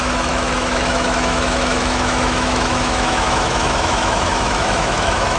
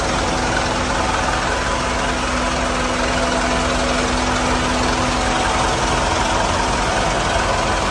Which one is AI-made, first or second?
first